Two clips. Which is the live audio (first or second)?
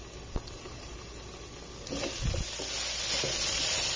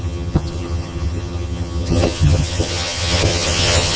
first